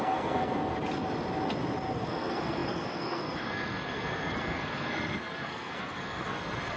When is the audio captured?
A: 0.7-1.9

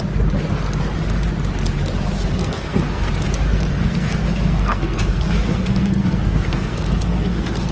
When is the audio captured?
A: 0.0-2.4; 3.1-3.5

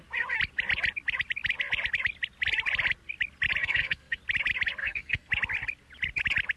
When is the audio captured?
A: 0.0-3.6; 4.2-4.8; 5.3-6.6